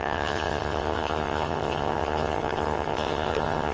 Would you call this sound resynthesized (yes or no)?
yes